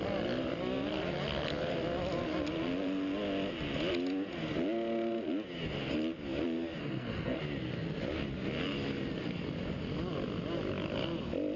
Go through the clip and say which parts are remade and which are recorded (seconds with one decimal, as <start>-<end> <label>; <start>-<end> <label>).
0.0-6.8 recorded; 6.8-7.4 remade; 7.4-11.6 recorded